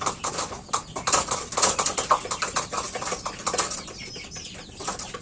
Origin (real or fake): real